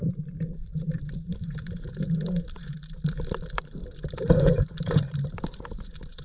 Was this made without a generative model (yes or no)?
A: no